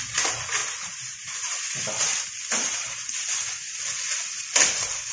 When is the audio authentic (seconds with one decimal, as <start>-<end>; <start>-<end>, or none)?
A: 0.0-0.6; 1.6-5.1